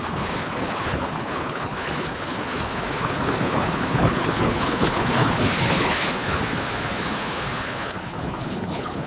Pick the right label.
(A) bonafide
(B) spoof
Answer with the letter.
B